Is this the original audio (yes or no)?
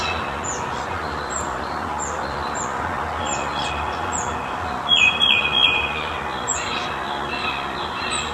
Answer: no